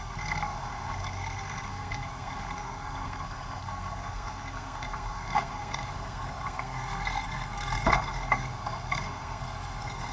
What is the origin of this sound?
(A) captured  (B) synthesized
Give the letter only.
B